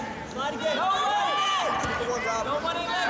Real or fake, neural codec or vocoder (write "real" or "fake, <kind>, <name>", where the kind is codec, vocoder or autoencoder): real